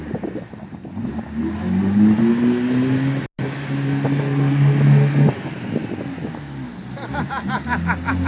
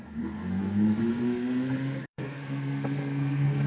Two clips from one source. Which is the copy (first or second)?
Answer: second